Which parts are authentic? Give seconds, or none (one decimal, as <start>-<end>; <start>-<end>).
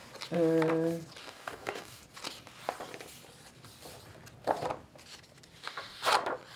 0.0-1.2; 2.0-5.6; 6.1-6.6